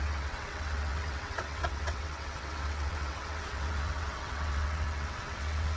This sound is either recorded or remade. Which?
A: remade